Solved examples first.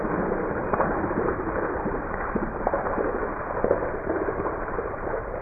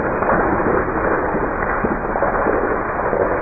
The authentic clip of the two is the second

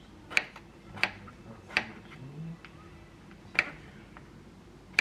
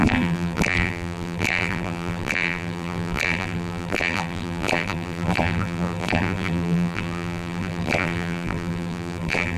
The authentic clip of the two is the first